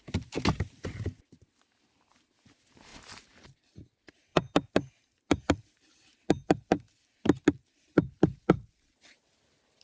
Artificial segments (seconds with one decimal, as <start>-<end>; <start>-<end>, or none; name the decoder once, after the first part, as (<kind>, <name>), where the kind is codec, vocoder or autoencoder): none